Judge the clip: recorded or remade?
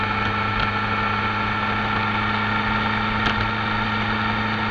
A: recorded